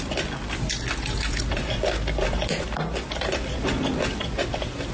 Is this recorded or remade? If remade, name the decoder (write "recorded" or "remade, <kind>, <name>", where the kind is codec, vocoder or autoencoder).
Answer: recorded